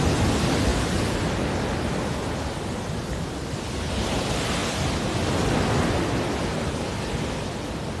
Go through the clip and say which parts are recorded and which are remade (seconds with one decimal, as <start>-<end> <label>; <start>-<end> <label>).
0.0-8.0 recorded